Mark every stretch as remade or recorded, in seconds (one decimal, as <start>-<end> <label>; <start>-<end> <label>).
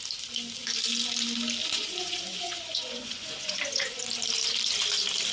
0.0-1.6 recorded; 1.6-4.0 remade; 4.0-5.3 recorded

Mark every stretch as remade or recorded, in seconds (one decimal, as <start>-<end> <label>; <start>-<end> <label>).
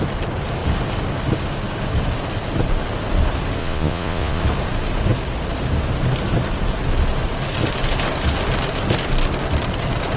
0.0-3.6 recorded; 3.6-4.4 remade; 4.4-10.2 recorded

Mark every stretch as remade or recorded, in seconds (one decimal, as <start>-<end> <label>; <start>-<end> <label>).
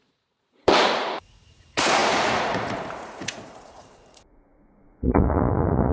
0.0-5.9 remade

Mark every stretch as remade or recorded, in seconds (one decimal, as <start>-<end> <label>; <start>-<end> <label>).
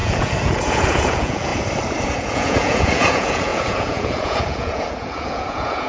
0.0-1.5 remade; 1.5-2.0 recorded; 2.0-5.9 remade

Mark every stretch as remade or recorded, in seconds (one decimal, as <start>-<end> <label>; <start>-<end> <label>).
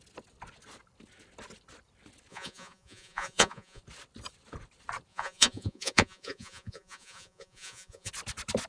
0.0-2.3 recorded; 2.3-3.8 remade; 3.8-5.1 recorded; 5.1-8.1 remade; 8.1-8.7 recorded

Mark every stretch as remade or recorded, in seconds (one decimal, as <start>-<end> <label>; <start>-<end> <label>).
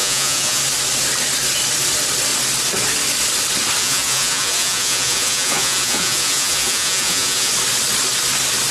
0.0-0.6 remade; 0.6-3.8 recorded; 3.8-7.5 remade; 7.5-8.7 recorded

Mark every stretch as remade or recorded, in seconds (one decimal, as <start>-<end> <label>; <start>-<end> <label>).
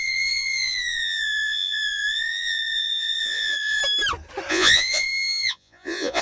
0.0-3.8 remade; 3.8-4.5 recorded; 4.5-6.2 remade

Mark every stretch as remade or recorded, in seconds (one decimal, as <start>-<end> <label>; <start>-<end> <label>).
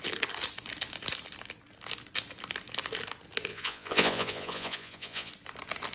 0.0-3.5 recorded; 3.5-5.3 remade; 5.3-5.9 recorded